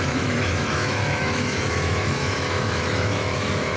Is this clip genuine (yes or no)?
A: no